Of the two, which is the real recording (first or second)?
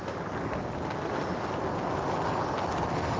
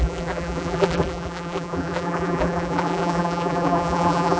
first